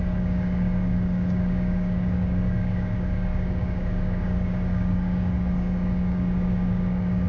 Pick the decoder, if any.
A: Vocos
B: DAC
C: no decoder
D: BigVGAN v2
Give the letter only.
B